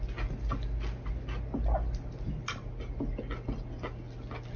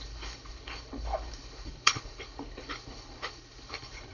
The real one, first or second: first